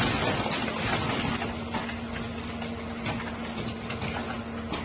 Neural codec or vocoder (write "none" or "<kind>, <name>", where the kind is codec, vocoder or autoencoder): none